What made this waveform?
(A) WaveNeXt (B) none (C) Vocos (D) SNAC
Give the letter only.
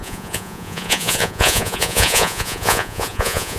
C